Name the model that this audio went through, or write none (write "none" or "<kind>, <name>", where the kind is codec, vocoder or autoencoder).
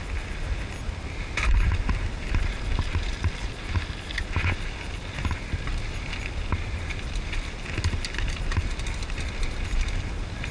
none